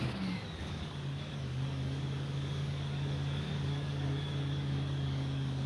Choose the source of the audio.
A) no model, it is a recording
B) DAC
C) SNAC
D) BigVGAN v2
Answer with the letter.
B